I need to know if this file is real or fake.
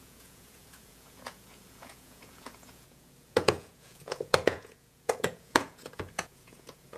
fake